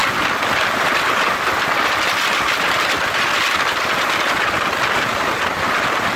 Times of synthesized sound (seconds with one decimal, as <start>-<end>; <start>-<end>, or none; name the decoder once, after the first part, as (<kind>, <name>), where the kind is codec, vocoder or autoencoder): none